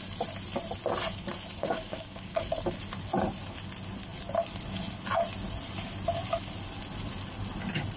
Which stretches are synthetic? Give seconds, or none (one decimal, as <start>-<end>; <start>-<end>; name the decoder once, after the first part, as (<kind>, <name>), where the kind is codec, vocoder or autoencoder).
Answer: 1.6-2.4 (codec, DAC)